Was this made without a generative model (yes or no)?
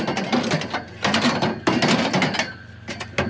yes